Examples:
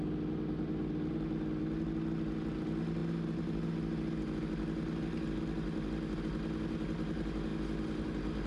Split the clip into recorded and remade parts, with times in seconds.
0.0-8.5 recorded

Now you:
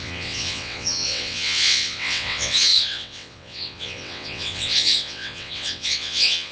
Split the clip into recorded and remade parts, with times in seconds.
0.0-6.5 remade